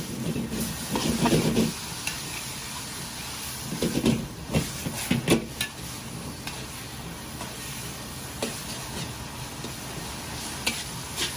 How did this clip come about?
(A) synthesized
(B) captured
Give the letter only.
B